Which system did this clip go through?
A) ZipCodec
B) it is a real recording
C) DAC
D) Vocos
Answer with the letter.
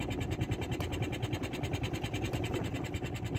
B